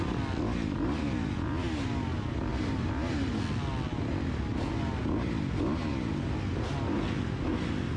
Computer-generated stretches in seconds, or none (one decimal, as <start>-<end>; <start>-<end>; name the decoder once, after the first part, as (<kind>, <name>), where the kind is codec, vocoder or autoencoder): 2.5-3.4 (vocoder, BigVGAN v2)